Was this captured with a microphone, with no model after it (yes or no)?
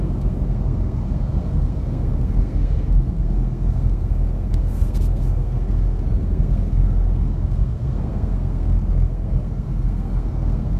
no